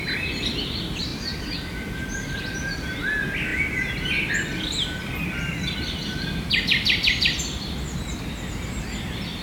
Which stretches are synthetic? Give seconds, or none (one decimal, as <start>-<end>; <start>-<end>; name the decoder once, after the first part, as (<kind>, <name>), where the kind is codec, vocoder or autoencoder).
none